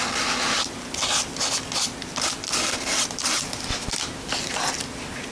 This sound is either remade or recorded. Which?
recorded